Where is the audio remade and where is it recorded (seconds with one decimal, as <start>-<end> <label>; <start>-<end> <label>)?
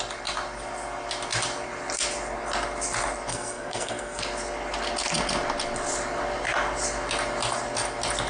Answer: 0.0-3.3 recorded; 3.3-4.2 remade; 4.2-8.3 recorded